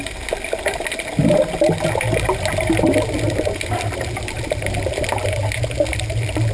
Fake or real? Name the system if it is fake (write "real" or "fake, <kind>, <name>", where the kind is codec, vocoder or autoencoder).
real